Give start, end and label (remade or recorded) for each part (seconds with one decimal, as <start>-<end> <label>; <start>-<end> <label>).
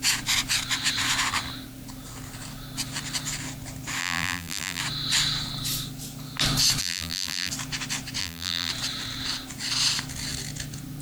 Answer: 0.0-4.0 recorded; 4.0-4.8 remade; 4.8-6.8 recorded; 6.8-7.5 remade; 7.5-8.2 recorded; 8.2-8.7 remade; 8.7-11.0 recorded